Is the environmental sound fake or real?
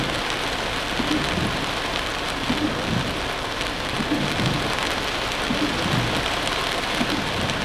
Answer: real